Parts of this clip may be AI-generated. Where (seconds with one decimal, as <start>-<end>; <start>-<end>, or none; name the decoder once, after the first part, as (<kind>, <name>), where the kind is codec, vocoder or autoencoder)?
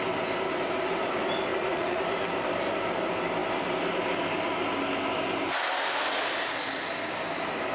1.5-2.0 (vocoder, Vocos)